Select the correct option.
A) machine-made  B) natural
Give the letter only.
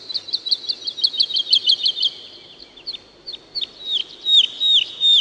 B